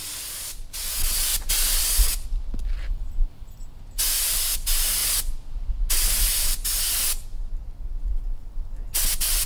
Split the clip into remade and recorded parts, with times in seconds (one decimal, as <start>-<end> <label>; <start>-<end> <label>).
0.0-9.5 recorded